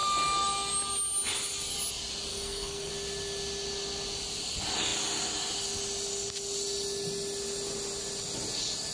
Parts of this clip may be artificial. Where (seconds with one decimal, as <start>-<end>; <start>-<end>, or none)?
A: 2.3-2.9